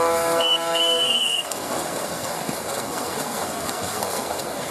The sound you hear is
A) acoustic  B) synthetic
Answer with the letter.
B